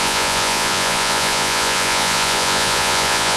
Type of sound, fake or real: fake